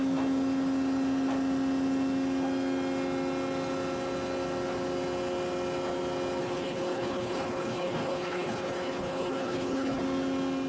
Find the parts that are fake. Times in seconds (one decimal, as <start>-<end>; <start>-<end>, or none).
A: 6.4-10.0